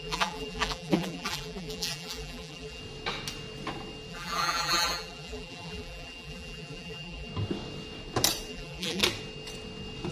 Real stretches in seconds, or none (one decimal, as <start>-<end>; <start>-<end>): 2.8-4.1; 7.3-8.5; 9.0-10.1

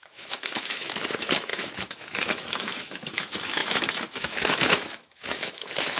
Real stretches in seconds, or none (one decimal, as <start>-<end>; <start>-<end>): none

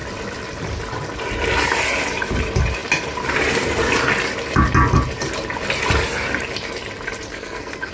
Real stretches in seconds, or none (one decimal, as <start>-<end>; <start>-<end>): 0.0-7.3

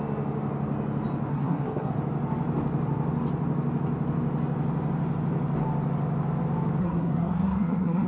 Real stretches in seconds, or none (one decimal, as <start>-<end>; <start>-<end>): 0.0-1.3; 1.9-6.8